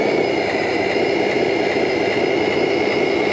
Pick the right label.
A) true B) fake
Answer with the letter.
B